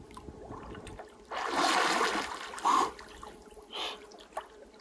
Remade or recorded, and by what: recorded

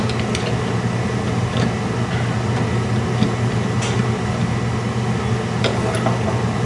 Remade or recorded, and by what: recorded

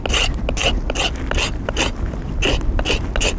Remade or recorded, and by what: recorded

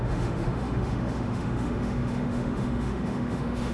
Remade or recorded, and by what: remade, autoencoder, DAC-VAE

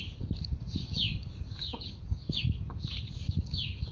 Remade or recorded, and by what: remade, codec, DAC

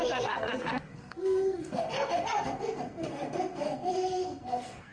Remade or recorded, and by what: remade, codec, SNAC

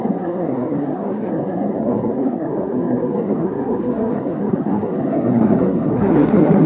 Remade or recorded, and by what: remade, codec, SNAC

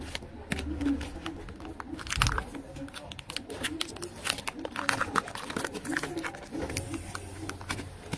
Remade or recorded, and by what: recorded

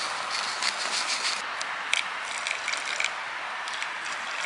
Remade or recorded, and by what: recorded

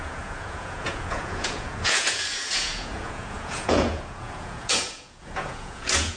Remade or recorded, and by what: remade, vocoder, Vocos